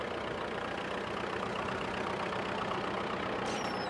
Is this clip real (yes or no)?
yes